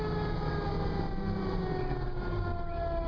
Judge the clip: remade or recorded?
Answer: recorded